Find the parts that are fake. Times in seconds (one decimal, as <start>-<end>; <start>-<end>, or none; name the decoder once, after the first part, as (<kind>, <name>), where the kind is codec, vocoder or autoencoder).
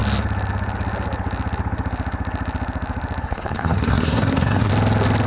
3.2-4.7 (codec, SNAC)